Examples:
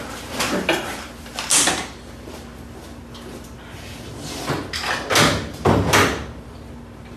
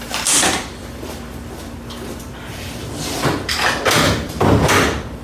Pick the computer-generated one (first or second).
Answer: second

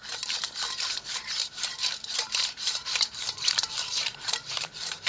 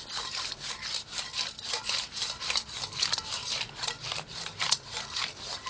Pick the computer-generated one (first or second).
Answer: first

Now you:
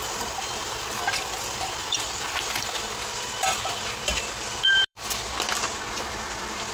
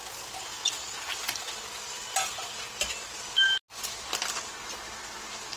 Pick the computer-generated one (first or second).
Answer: first